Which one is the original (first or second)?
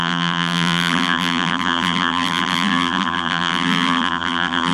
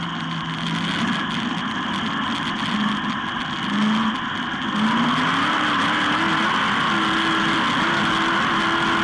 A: second